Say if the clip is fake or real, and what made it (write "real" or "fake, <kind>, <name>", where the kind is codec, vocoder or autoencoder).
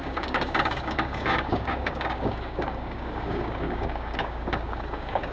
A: fake, codec, DAC